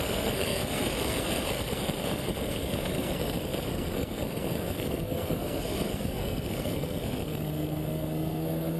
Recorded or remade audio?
remade